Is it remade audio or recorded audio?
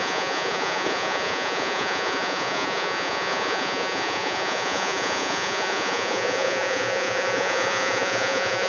remade